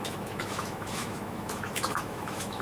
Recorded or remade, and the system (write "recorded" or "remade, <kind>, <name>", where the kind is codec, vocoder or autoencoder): remade, autoencoder, DAC-VAE